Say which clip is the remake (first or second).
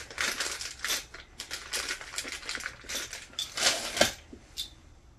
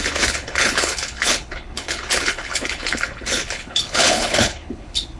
second